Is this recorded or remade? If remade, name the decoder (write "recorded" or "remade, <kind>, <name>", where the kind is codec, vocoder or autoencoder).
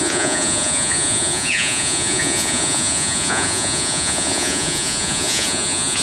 remade, vocoder, Vocos